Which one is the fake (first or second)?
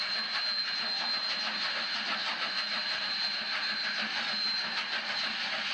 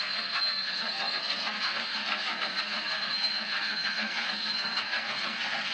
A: second